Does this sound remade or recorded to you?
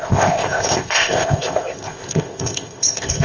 remade